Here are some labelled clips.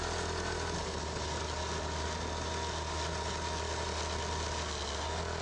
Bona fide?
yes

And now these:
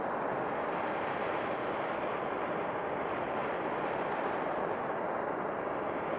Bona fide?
no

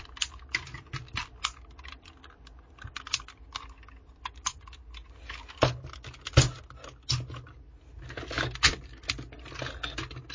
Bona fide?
yes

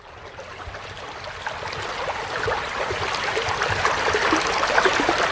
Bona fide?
yes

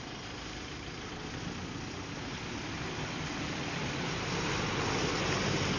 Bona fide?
yes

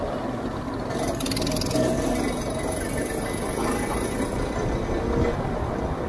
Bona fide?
yes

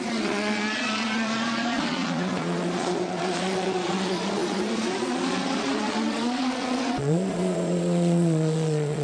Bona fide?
no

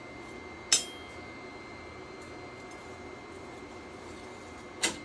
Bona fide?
yes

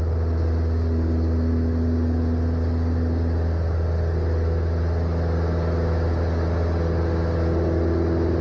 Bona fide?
yes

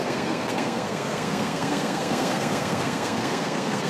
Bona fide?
no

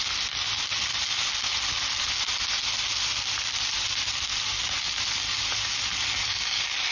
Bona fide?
yes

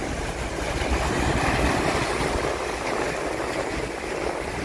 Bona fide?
yes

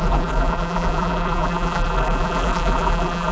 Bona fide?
no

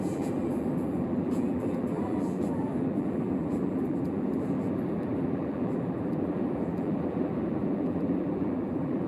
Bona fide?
no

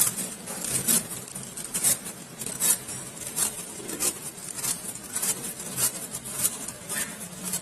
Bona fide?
no